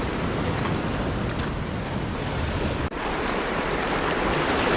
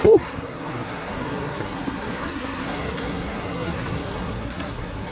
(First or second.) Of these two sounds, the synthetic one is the second